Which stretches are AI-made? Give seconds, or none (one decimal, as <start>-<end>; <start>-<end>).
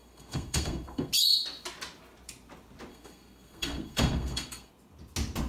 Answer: 0.0-1.1; 2.9-4.7